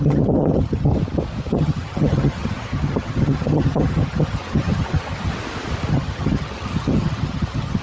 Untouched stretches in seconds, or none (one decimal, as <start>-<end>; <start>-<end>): 0.9-1.5; 5.3-5.9